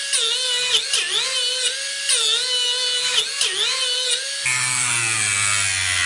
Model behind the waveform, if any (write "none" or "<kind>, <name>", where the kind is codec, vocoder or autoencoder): none